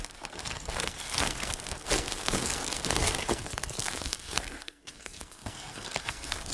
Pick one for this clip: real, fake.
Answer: fake